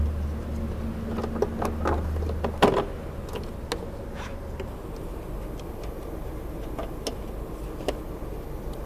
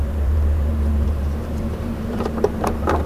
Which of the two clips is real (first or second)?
first